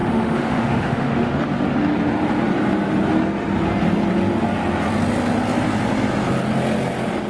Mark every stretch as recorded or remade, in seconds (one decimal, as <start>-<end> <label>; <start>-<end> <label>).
0.0-1.4 remade; 1.4-7.3 recorded